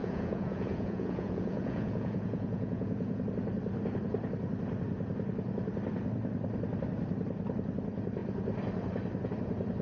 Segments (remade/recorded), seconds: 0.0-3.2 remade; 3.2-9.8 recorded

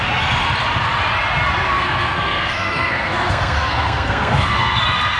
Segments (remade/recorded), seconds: 0.0-1.7 recorded; 1.7-4.8 remade; 4.8-5.2 recorded

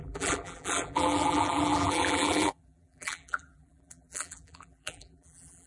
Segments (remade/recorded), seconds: 0.0-5.7 remade

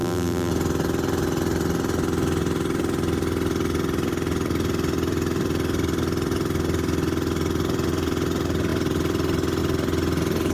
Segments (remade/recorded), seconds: 0.0-0.5 remade; 0.5-10.5 recorded

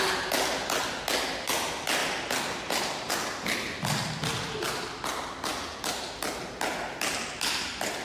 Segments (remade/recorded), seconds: 0.0-8.0 recorded